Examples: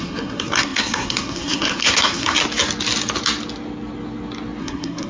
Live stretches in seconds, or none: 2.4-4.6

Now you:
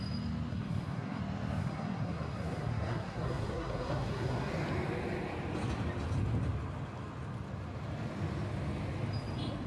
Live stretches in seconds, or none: 0.0-0.5; 1.2-1.6; 4.5-9.7

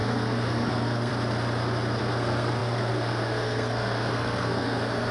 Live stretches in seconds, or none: 1.1-2.0

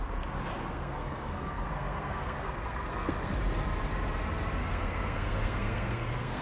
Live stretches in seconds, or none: 0.0-0.7; 3.3-4.6

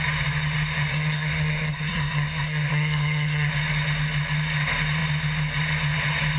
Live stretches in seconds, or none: 0.0-0.9; 3.5-6.4

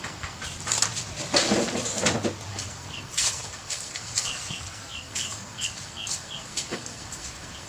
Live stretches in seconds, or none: 0.4-2.5

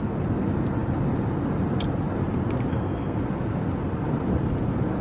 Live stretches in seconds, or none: 0.0-2.7; 3.2-5.0